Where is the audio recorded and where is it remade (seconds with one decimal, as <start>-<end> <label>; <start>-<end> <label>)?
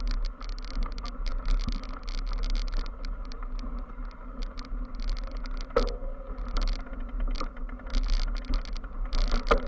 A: 0.0-9.7 recorded